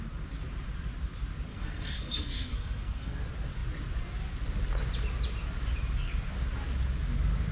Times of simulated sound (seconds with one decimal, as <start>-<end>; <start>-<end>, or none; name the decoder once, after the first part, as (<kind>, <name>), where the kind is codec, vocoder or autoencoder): 1.5-3.2 (codec, SNAC)